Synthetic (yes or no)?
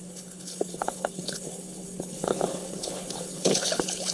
yes